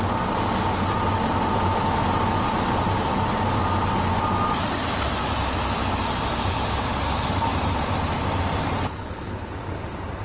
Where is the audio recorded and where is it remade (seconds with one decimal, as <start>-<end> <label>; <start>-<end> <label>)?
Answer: 0.0-8.8 recorded; 8.8-9.5 remade; 9.5-10.2 recorded